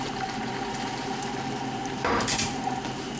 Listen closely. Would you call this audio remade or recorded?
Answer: remade